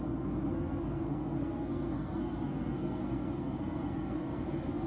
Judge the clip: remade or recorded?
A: remade